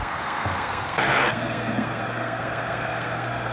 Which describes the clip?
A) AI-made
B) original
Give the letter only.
A